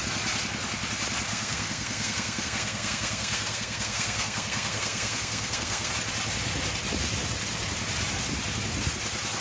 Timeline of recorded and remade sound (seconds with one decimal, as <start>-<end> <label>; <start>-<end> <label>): 0.0-1.3 recorded; 1.3-5.9 remade; 5.9-9.4 recorded